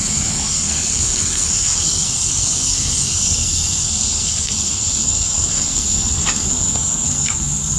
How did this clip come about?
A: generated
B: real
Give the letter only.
A